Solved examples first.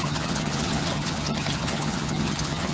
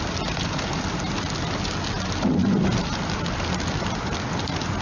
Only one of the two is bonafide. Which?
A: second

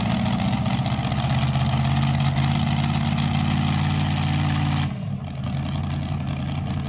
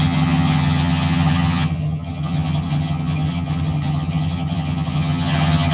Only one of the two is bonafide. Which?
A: first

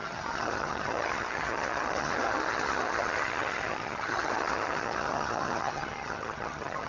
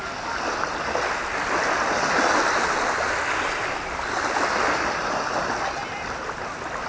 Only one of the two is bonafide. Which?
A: second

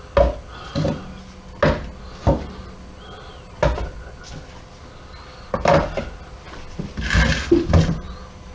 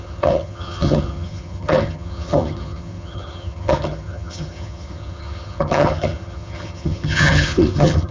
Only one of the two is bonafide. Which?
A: first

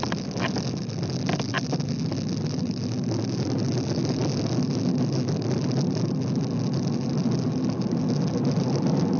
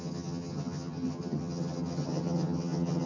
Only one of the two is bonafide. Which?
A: first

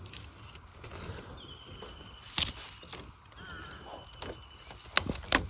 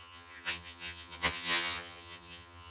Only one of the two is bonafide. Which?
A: first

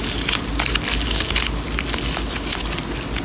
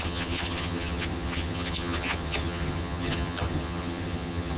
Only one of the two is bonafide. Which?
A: first